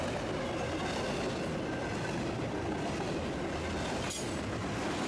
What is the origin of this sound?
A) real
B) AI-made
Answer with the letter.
A